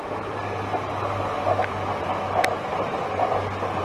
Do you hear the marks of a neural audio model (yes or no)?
no